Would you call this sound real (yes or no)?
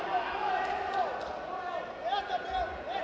yes